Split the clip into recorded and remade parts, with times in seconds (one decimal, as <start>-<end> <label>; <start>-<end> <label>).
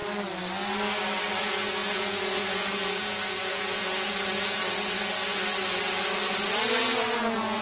0.0-1.4 recorded; 1.4-4.6 remade; 4.6-6.7 recorded; 6.7-7.6 remade